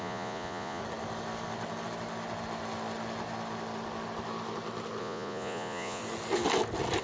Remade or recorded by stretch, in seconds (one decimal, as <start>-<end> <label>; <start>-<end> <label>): 0.0-0.8 remade; 0.8-5.0 recorded; 5.0-6.0 remade; 6.0-7.0 recorded